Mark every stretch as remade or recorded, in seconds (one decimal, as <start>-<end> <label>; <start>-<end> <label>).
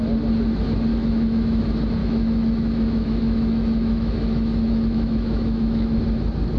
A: 0.0-0.9 recorded; 0.9-1.6 remade; 1.6-2.0 recorded; 2.0-6.0 remade; 6.0-6.6 recorded